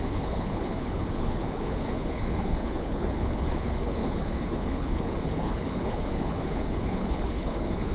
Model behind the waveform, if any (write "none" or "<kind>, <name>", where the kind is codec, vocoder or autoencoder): codec, HILCodec